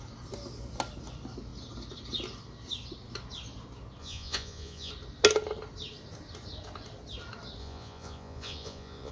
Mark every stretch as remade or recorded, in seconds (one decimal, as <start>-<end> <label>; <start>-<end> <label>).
0.0-4.0 recorded; 4.0-4.9 remade; 4.9-7.6 recorded; 7.6-9.1 remade